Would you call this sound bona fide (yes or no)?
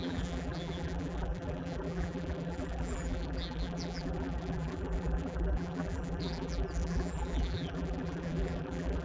no